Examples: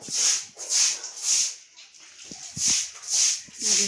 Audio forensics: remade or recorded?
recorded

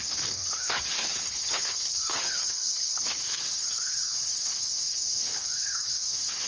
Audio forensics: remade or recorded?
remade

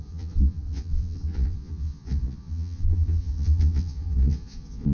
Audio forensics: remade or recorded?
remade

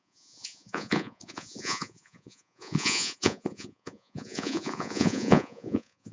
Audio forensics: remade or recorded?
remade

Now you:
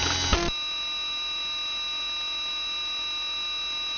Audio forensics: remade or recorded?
recorded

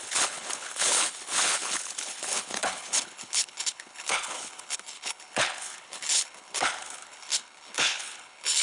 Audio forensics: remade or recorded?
remade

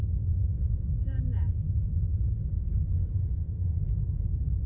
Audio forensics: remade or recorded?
remade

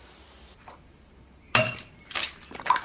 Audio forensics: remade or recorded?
remade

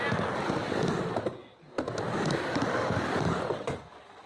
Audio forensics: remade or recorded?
recorded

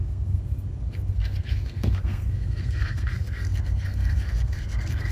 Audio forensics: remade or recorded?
remade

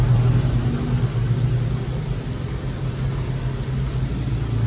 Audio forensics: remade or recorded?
recorded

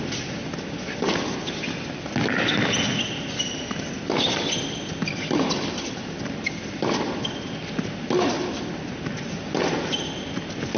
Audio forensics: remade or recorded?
recorded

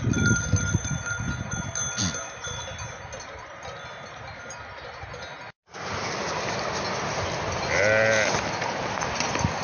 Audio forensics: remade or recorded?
recorded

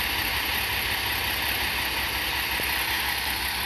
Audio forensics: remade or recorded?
recorded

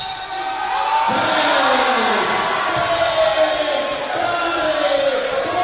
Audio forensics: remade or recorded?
recorded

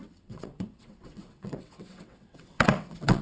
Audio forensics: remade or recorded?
remade